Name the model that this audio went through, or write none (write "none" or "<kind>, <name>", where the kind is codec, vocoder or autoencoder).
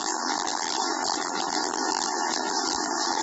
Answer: vocoder, BigVGAN v2